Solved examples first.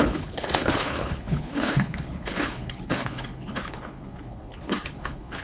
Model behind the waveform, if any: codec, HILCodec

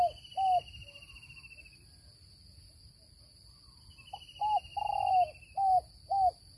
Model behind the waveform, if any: none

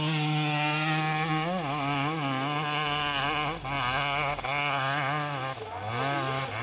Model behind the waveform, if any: none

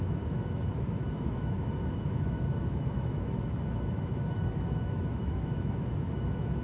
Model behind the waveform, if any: autoencoder, DAC-VAE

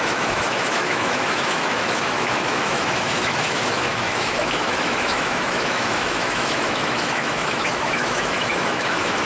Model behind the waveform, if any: autoencoder, DAC-VAE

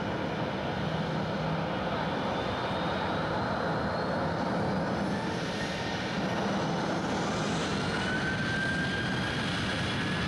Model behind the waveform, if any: none